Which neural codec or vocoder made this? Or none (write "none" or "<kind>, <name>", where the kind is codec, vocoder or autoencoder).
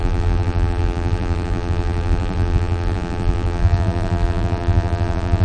vocoder, BigVGAN v2